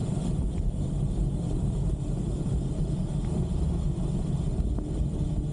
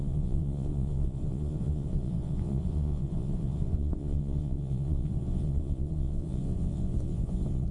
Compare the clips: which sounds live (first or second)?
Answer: first